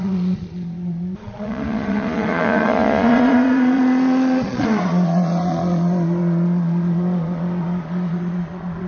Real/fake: fake